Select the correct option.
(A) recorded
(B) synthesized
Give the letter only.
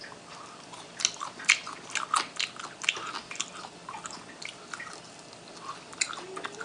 A